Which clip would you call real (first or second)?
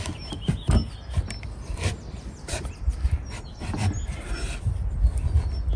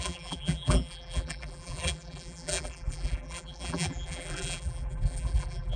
first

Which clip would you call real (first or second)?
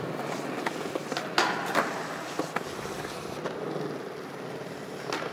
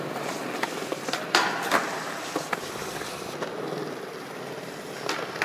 first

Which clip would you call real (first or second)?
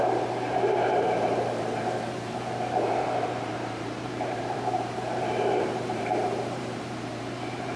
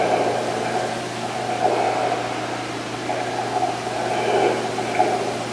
second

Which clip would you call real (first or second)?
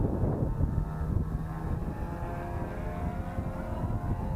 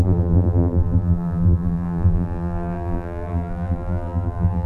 first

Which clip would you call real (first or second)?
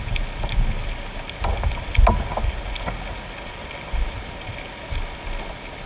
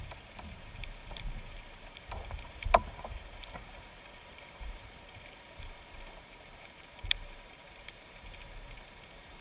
first